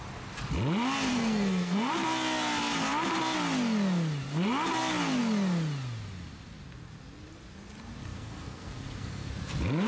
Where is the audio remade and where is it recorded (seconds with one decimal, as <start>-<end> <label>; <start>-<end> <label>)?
0.0-1.1 recorded; 1.1-1.9 remade; 1.9-8.0 recorded; 8.0-9.3 remade; 9.3-9.9 recorded